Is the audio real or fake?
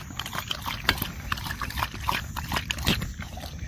fake